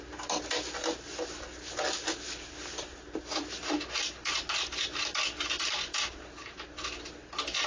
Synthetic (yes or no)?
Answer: no